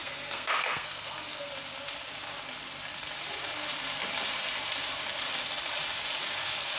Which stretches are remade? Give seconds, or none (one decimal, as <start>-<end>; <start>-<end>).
0.0-1.5